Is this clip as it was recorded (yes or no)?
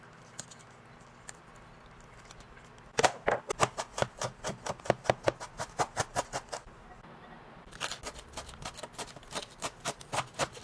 yes